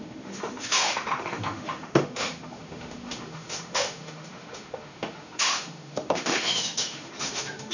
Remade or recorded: remade